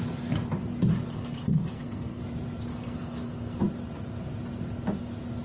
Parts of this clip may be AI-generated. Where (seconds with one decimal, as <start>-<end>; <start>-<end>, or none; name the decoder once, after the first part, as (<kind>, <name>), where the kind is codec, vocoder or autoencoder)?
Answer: 1.1-2.2 (codec, SNAC); 2.7-3.6